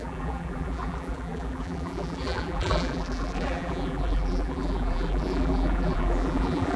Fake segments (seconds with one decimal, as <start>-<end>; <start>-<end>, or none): 0.0-6.8